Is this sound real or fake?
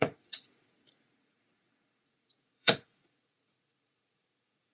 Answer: fake